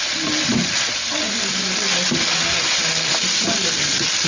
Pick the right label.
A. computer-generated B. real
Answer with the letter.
B